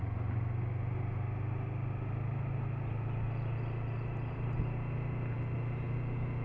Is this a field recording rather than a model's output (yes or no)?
yes